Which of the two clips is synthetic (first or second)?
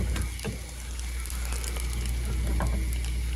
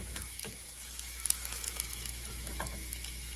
second